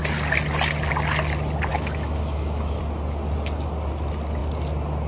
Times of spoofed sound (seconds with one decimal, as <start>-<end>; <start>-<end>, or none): 1.7-2.8